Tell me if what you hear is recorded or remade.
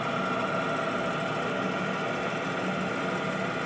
recorded